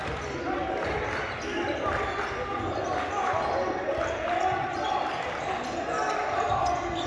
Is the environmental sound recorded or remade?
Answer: recorded